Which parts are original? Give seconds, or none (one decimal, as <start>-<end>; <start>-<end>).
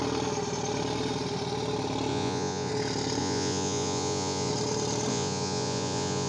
0.0-2.1; 2.7-3.2; 4.5-5.1